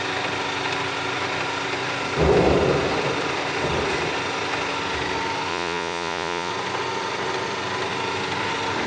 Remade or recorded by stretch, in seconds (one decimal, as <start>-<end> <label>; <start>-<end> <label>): 0.0-5.5 recorded; 5.5-6.5 remade; 6.5-8.9 recorded